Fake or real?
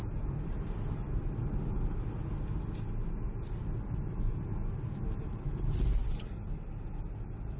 real